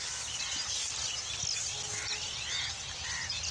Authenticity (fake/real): real